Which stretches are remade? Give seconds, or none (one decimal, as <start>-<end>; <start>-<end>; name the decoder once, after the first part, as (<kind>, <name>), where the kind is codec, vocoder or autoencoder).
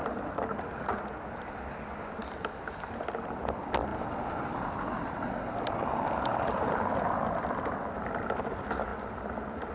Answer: none